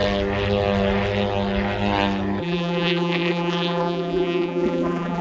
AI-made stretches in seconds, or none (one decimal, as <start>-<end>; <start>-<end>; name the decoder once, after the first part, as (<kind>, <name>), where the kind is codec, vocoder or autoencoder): 2.4-5.2 (vocoder, BigVGAN v2)